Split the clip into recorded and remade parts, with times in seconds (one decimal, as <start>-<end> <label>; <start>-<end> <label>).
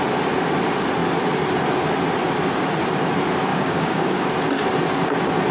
0.0-3.5 recorded; 3.5-4.3 remade; 4.3-5.5 recorded